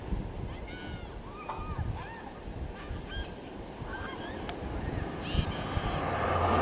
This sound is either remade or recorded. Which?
recorded